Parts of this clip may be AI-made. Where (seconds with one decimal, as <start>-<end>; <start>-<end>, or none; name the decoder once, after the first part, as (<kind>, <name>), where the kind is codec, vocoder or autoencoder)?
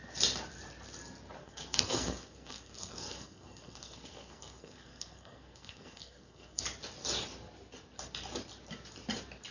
1.4-6.6 (codec, SNAC)